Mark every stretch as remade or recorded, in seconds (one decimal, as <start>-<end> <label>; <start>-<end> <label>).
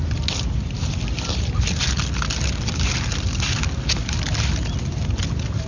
0.0-5.7 recorded